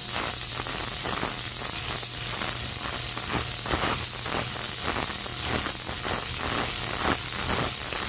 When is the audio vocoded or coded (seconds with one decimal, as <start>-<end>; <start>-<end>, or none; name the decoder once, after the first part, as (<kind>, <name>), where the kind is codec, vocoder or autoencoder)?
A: none